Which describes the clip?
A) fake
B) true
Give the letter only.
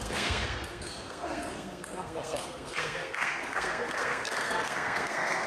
A